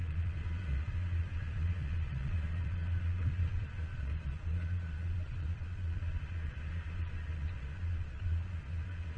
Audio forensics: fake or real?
fake